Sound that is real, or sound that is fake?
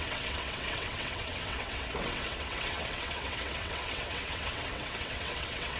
fake